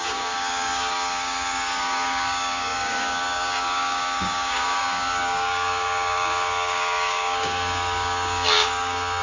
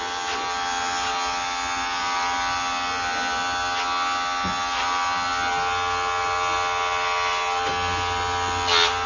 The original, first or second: second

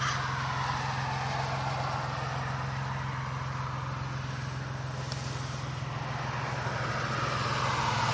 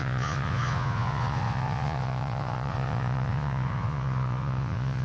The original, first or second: first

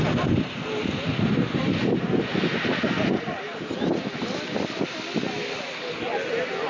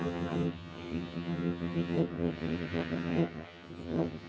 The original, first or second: first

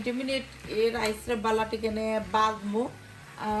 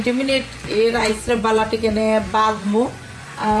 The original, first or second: first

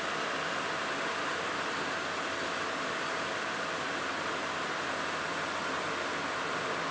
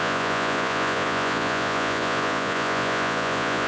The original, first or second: first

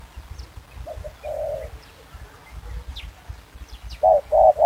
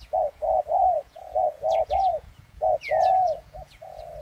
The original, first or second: first